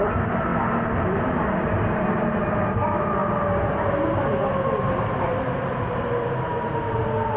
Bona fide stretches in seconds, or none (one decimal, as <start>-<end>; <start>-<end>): 0.0-7.4